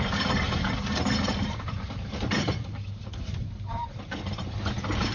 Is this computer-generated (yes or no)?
yes